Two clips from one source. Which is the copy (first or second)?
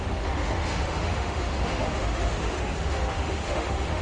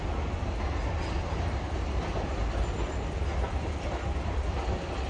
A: first